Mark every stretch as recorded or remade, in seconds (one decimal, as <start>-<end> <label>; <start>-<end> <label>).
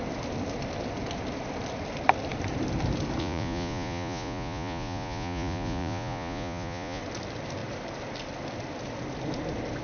0.0-3.2 recorded; 3.2-7.0 remade; 7.0-9.8 recorded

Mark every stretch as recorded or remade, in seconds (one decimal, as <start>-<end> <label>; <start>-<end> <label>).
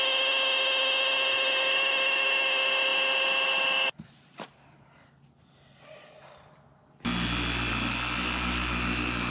0.0-9.3 recorded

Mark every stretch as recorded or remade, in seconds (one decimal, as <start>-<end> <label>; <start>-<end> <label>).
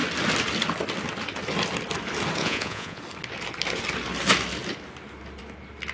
0.0-2.4 recorded; 2.4-3.0 remade; 3.0-5.9 recorded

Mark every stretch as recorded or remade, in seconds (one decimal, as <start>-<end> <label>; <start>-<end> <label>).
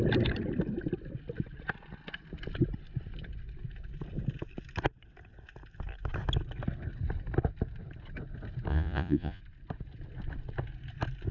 0.0-8.7 recorded; 8.7-9.4 remade; 9.4-11.3 recorded